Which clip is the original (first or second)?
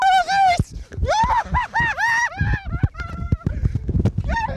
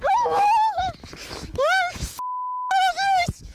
first